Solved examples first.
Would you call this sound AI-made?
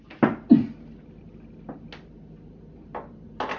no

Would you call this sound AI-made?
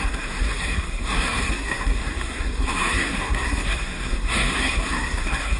yes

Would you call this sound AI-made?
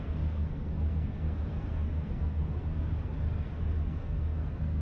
yes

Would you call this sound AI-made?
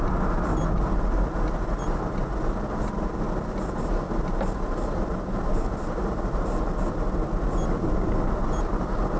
no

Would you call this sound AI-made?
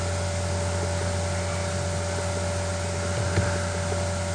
no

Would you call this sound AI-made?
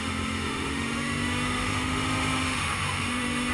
yes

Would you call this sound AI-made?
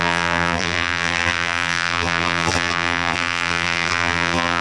yes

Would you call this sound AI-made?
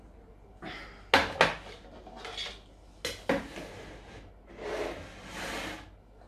no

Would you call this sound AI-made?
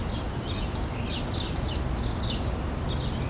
no